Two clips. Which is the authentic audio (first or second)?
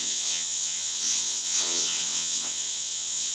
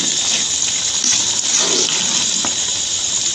second